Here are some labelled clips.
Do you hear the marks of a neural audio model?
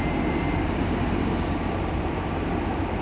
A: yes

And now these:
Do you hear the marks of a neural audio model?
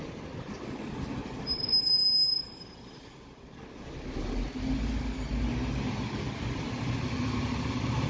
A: no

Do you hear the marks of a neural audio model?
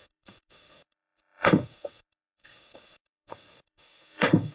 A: yes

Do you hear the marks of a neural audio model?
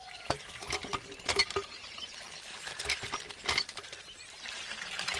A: no